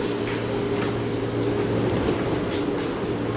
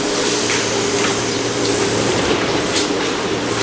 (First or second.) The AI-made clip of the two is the second